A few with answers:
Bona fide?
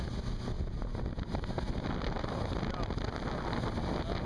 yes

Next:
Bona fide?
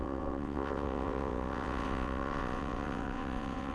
no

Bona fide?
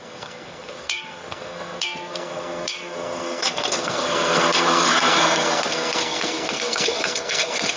no